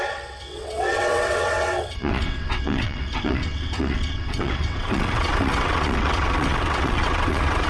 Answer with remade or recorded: remade